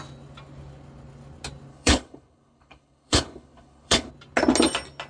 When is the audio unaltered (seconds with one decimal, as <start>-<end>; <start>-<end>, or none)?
0.0-1.7; 4.1-5.1